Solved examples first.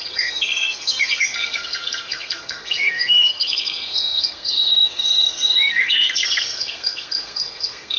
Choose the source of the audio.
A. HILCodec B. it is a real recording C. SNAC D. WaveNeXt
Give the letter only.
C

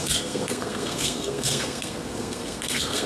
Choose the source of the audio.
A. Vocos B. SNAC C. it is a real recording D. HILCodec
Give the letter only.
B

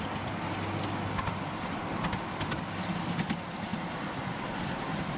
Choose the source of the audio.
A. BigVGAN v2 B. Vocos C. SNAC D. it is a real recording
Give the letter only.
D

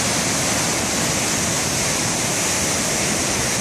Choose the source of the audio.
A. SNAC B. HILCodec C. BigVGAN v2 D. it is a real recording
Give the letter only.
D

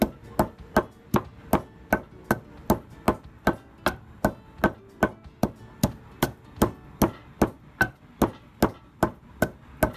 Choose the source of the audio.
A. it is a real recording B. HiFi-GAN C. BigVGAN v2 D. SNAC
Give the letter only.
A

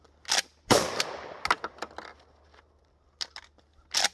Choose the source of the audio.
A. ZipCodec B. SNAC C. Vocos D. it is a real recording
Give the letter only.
D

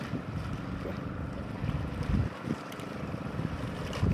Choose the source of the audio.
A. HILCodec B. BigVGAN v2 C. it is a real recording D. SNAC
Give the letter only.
C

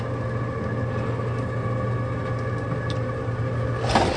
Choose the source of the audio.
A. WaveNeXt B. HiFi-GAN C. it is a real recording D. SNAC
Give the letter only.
C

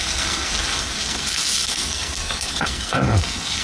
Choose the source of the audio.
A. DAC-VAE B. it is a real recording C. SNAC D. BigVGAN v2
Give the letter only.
C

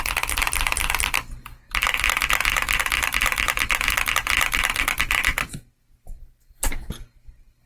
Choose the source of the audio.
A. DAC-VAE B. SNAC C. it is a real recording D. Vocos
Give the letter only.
C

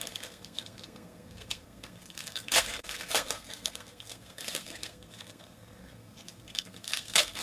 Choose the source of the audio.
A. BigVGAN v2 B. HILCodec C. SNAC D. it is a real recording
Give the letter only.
C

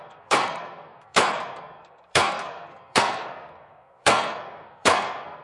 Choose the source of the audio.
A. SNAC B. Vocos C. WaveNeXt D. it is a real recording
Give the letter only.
A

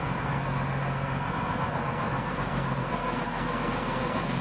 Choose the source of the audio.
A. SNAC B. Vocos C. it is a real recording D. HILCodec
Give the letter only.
A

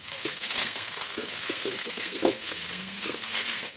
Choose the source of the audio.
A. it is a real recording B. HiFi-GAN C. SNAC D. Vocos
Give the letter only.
C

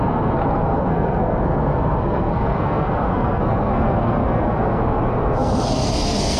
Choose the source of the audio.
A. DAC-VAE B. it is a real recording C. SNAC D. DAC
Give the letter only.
C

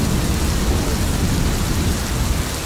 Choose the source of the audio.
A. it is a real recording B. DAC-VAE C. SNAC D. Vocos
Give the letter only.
A